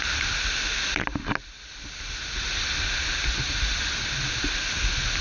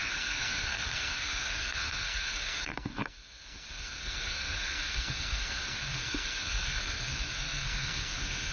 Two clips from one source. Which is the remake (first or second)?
second